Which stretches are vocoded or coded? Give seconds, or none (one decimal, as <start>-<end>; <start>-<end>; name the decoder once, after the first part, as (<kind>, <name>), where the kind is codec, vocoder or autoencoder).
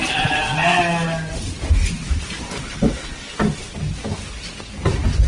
none